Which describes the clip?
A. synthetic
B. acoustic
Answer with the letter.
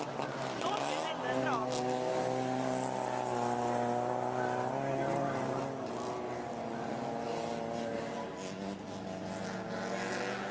B